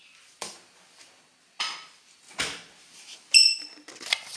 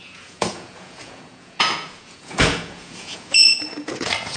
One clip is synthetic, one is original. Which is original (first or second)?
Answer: first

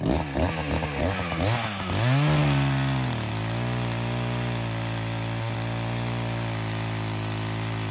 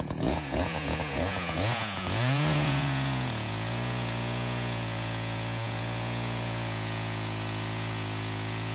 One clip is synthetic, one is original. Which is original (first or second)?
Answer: first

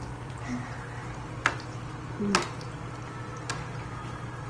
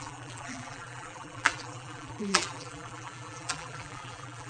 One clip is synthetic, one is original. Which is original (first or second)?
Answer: first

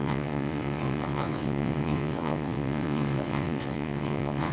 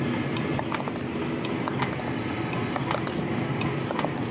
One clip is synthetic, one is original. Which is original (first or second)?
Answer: second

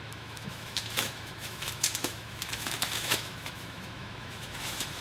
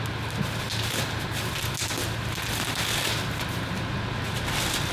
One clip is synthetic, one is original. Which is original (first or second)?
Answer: second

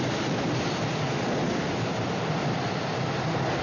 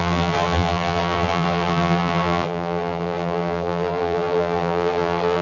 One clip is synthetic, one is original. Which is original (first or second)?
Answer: first